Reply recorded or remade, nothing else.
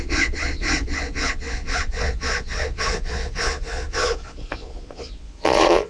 remade